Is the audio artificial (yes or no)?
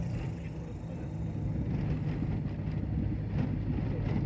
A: no